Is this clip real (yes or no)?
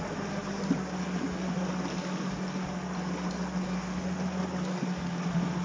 yes